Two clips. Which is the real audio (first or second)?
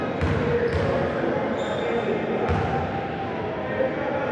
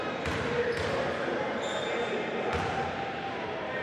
first